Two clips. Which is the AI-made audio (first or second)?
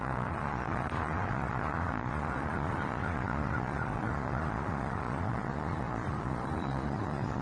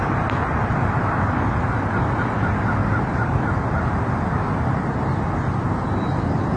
first